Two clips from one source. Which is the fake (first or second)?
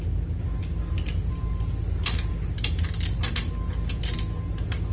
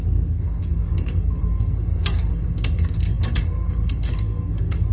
second